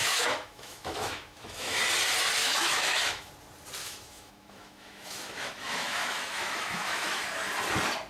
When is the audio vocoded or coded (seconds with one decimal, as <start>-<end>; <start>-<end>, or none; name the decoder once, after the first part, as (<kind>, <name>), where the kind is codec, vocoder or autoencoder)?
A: 0.0-1.8 (autoencoder, DAC-VAE); 2.4-3.3; 3.8-7.2